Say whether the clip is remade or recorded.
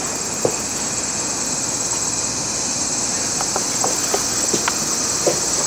recorded